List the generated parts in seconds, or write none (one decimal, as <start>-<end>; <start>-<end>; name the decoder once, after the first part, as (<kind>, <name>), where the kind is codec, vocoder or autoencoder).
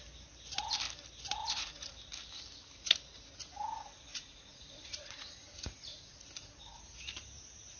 1.4-1.9 (vocoder, Vocos); 4.1-5.3; 5.9-6.8